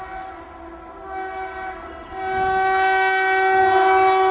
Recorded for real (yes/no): yes